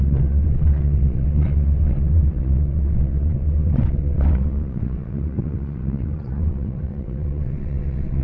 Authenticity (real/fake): fake